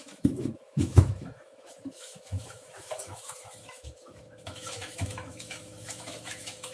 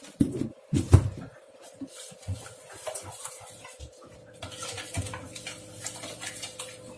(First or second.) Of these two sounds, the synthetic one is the first